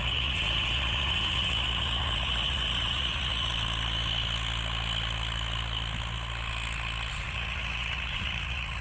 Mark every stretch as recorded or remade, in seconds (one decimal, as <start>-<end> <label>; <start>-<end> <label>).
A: 0.0-3.5 remade; 3.5-7.1 recorded; 7.1-8.8 remade